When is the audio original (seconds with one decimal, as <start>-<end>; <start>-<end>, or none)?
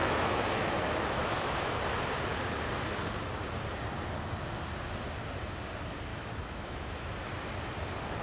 1.8-6.1; 7.1-8.2